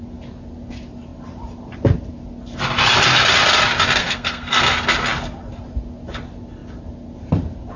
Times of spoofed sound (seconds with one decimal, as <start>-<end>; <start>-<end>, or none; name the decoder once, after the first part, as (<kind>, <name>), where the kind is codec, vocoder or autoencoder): 4.0-4.6 (codec, SNAC)